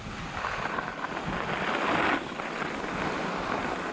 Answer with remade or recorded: recorded